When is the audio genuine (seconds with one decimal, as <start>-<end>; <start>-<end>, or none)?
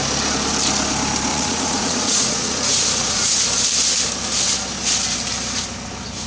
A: 0.0-1.3; 3.4-6.3